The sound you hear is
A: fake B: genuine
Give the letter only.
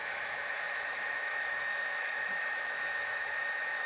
A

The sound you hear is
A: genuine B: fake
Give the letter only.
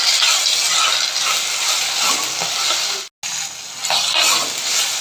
A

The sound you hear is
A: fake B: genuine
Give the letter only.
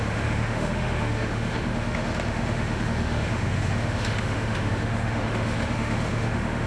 A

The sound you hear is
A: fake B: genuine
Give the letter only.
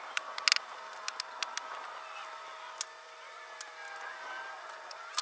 B